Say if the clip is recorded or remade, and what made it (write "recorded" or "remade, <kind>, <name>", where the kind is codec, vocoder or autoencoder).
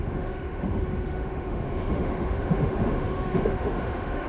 remade, autoencoder, DAC-VAE